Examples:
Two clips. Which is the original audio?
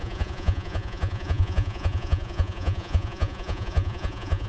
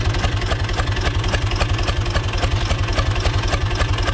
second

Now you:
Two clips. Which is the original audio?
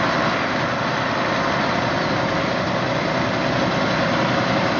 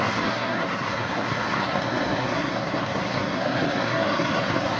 first